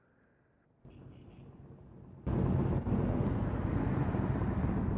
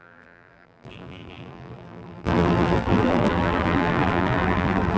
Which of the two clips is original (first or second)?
first